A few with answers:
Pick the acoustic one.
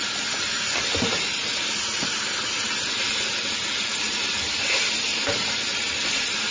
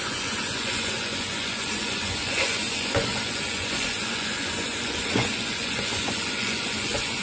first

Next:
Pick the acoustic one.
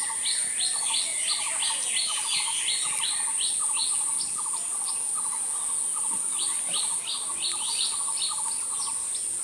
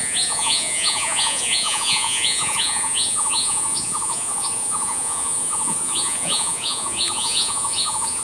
first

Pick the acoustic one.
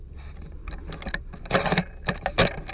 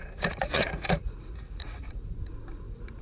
first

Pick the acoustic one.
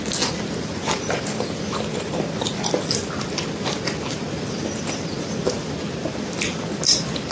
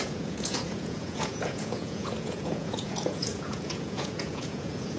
first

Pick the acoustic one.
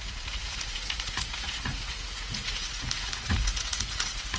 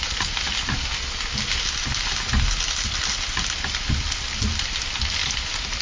second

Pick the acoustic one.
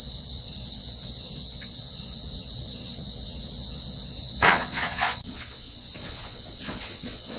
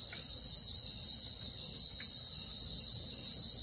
second